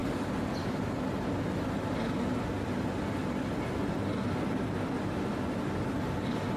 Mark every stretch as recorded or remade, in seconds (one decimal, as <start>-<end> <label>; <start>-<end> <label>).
0.0-6.6 recorded